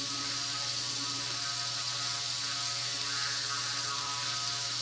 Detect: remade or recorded recorded